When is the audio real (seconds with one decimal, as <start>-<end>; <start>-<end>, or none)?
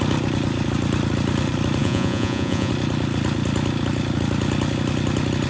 0.0-1.8; 2.7-5.5